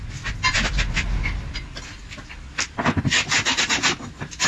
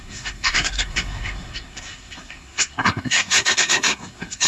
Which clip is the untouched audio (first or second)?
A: first